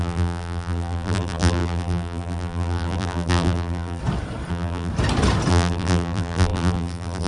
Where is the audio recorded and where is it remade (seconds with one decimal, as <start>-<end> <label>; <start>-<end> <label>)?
0.0-4.0 remade; 4.0-4.5 recorded; 4.5-4.9 remade; 4.9-5.5 recorded; 5.5-7.3 remade